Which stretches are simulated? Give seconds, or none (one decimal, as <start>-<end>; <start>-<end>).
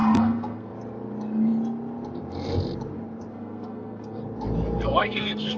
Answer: 0.0-0.7; 3.3-4.2; 5.0-5.6